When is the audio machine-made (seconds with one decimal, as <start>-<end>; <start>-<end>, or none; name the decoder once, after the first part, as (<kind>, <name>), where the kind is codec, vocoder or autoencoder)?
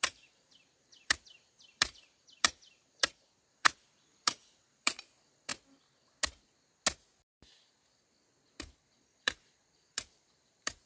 0.0-5.5 (vocoder, BigVGAN v2); 8.6-10.9